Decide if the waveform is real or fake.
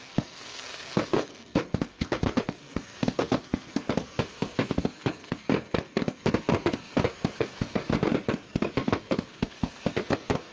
fake